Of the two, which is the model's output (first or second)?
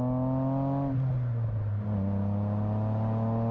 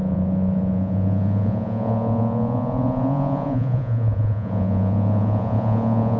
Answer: second